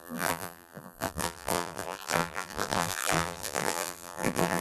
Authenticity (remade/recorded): remade